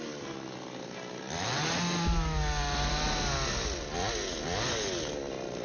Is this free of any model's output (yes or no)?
yes